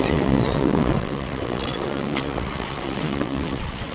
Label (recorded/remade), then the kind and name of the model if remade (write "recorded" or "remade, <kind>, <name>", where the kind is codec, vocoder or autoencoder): remade, vocoder, WaveNeXt